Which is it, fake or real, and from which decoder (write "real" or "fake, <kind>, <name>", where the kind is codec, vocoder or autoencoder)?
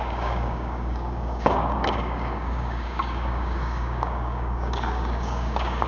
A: fake, codec, DAC